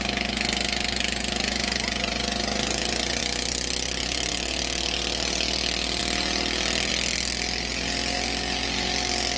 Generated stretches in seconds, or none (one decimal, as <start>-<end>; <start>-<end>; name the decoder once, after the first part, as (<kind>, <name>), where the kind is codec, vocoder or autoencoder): none